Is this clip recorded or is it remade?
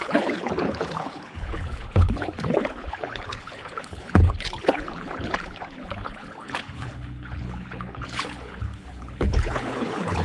remade